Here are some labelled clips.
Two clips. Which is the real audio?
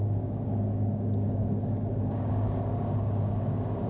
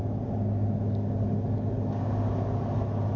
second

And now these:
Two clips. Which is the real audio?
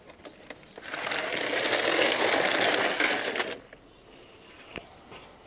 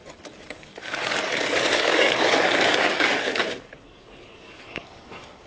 first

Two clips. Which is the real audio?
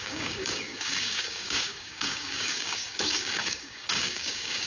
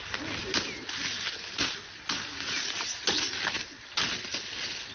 second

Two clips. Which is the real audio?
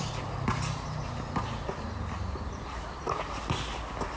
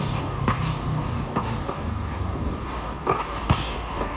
first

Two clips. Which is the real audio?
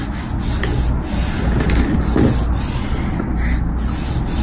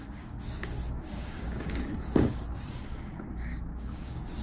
first